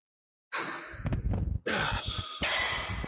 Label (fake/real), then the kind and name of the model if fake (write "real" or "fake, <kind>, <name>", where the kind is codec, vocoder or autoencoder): real